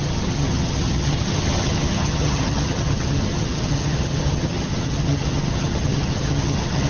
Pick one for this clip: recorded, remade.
remade